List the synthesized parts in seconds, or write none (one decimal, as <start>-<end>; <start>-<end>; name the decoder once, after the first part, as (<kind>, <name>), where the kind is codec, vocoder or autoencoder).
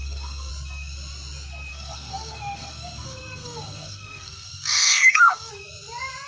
0.0-0.5 (codec, SNAC); 1.7-5.5